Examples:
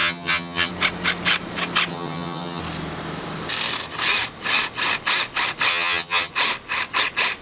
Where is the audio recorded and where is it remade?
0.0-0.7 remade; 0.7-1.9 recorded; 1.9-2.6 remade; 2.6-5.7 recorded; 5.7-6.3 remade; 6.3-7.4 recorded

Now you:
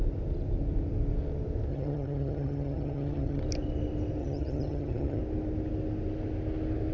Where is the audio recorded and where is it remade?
0.0-1.7 recorded; 1.7-3.4 remade; 3.4-4.2 recorded; 4.2-5.2 remade; 5.2-6.9 recorded

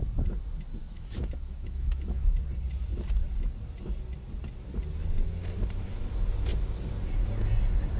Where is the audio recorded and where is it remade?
0.0-0.8 recorded; 0.8-2.4 remade; 2.4-8.0 recorded